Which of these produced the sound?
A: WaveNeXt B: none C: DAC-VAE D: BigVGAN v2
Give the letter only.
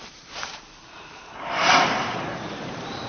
D